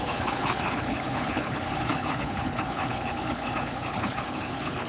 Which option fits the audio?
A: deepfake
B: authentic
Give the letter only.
A